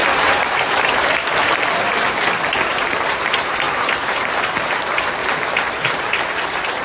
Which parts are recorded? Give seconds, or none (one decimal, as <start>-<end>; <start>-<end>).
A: 5.2-6.2